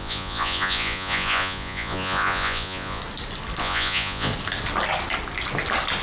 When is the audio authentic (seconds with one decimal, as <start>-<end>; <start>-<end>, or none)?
3.0-3.6; 4.3-6.0